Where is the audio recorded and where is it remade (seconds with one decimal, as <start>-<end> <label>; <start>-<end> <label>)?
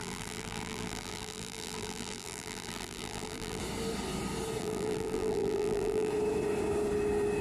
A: 0.0-3.6 remade; 3.6-4.6 recorded; 4.6-6.1 remade; 6.1-7.4 recorded